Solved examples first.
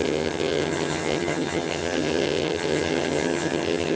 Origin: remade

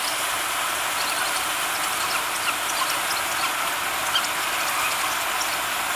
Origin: recorded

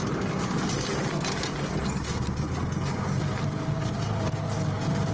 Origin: recorded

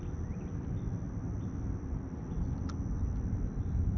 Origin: recorded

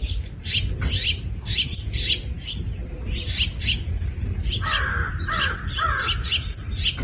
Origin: recorded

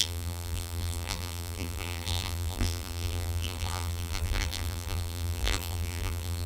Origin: remade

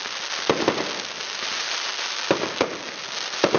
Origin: recorded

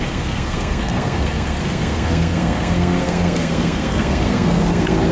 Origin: remade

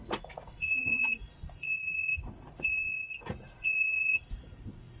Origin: remade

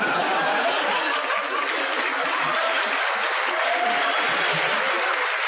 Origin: recorded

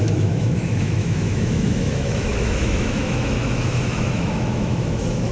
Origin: remade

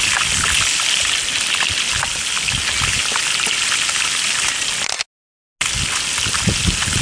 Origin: recorded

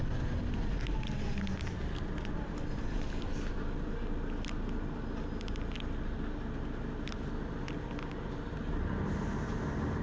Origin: recorded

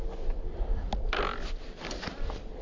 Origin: recorded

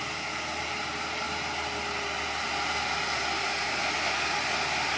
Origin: recorded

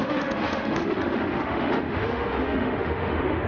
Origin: remade